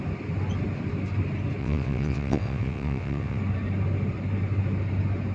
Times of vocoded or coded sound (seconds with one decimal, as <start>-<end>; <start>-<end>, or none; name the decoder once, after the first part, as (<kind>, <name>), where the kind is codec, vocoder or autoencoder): 1.6-3.4 (vocoder, WaveNeXt)